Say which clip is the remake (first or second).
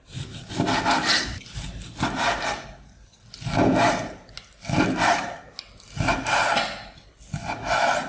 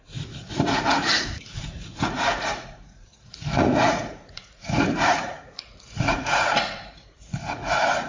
second